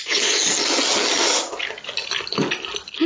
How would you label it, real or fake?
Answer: real